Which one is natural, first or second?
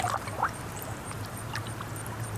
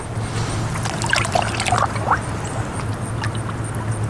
second